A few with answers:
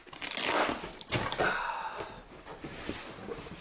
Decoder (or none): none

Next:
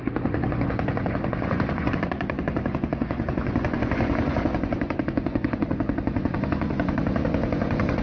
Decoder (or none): vocoder, Vocos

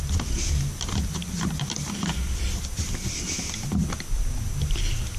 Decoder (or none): none